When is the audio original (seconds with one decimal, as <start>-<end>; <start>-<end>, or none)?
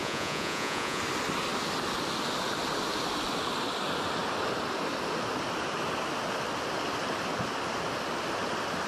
1.0-8.9